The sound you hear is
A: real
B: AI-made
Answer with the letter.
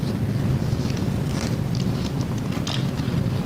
A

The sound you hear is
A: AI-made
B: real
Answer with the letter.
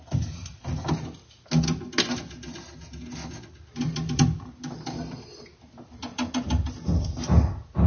B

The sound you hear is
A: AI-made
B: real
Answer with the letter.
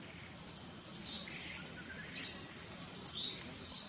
B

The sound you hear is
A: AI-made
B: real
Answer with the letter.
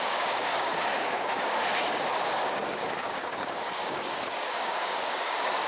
A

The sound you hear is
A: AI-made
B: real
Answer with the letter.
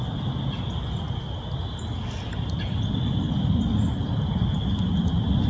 B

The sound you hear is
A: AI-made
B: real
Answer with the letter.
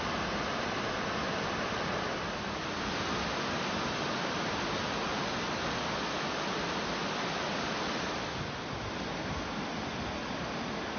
B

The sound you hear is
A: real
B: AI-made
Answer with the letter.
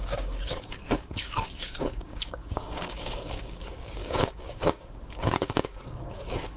B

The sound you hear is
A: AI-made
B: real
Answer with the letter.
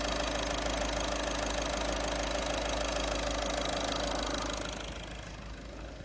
B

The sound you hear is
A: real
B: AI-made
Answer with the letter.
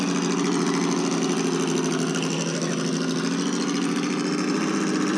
A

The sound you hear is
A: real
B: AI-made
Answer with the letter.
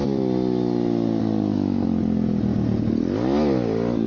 A